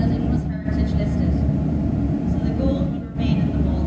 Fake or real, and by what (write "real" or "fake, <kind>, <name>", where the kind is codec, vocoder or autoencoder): real